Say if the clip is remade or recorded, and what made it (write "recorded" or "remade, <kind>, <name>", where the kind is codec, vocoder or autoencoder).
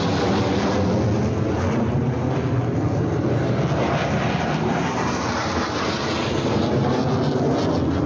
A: recorded